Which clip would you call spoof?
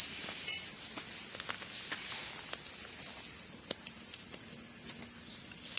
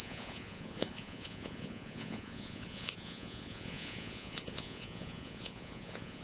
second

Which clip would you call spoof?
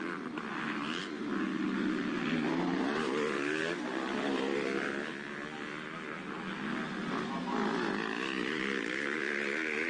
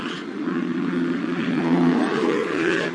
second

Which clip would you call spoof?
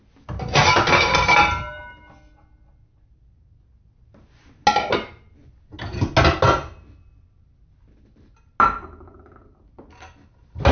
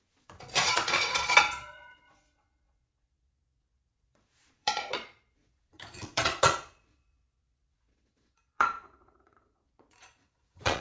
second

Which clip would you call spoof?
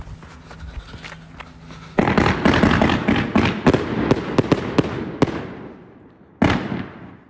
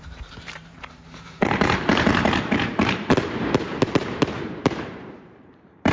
second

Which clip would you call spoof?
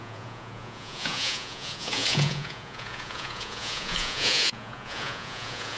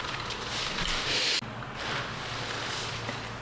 first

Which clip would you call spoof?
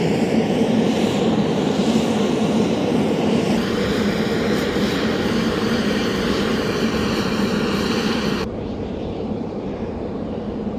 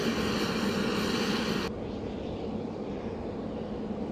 first